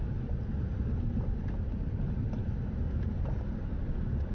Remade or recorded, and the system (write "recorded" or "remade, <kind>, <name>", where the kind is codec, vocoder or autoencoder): recorded